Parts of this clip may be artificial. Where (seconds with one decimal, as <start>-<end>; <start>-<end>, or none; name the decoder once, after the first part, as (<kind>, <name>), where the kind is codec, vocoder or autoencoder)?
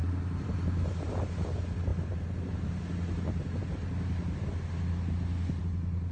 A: none